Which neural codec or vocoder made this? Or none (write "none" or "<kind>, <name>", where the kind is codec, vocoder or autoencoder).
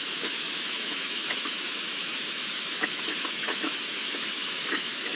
autoencoder, DAC-VAE